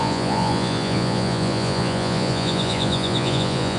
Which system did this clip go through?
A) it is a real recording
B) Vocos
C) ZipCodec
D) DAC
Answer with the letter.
B